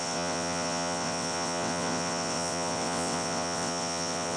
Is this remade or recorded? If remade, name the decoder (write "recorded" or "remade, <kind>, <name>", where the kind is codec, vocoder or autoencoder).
remade, vocoder, WaveNeXt